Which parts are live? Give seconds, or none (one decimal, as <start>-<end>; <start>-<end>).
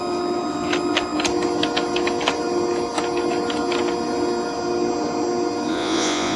0.0-5.7